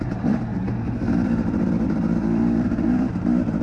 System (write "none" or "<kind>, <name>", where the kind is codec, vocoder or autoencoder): vocoder, BigVGAN v2